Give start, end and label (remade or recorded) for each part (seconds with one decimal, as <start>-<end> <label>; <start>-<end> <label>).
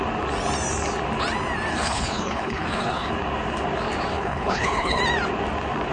0.0-1.7 recorded; 1.7-3.1 remade; 3.1-4.1 recorded; 4.1-5.0 remade; 5.0-5.9 recorded